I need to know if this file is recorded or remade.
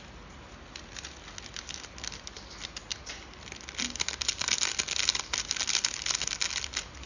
recorded